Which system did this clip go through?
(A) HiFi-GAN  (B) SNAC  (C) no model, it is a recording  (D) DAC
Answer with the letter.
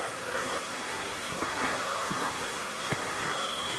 B